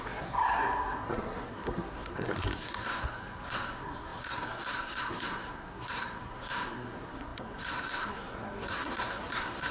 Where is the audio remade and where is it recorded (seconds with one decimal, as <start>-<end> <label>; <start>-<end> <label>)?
0.0-9.7 remade